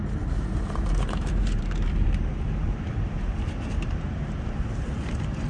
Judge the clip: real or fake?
fake